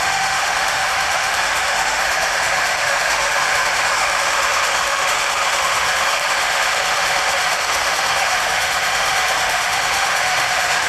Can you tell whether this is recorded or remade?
remade